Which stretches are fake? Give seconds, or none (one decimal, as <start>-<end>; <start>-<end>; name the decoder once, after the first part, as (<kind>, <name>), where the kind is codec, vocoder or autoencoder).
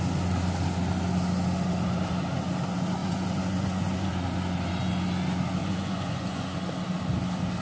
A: 3.0-4.1 (vocoder, Vocos); 5.6-6.6